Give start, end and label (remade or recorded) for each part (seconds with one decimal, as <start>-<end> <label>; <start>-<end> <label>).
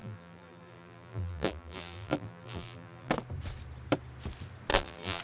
0.0-3.1 remade; 3.1-4.7 recorded; 4.7-5.2 remade